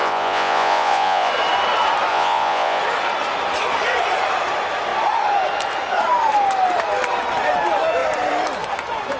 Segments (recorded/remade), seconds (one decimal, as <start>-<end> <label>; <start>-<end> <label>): 0.0-1.3 remade; 1.3-2.1 recorded; 2.1-2.8 remade; 2.8-9.2 recorded